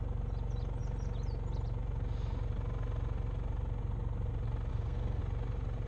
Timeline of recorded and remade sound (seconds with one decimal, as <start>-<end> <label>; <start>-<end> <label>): 0.0-4.7 recorded; 4.7-5.2 remade; 5.2-5.9 recorded